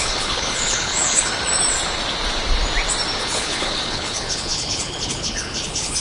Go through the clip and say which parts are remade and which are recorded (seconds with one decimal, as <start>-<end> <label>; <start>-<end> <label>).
0.0-1.3 remade; 1.3-3.2 recorded; 3.2-6.0 remade